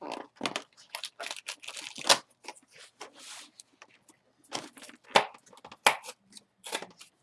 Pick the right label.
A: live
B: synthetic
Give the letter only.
A